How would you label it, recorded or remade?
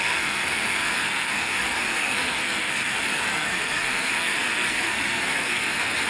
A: remade